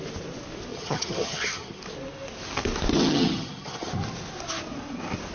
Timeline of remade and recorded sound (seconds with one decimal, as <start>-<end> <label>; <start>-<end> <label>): 0.0-0.7 recorded; 0.7-1.8 remade; 1.8-2.9 recorded; 2.9-3.9 remade; 3.9-5.3 recorded